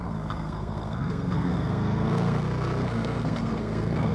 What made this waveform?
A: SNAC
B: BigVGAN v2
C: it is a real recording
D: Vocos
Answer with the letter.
A